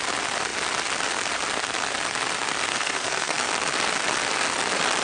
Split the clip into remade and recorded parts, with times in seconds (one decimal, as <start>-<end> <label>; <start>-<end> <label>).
0.0-2.7 recorded; 2.7-3.5 remade; 3.5-5.0 recorded